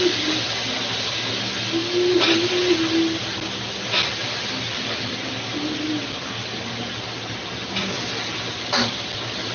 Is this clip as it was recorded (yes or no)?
yes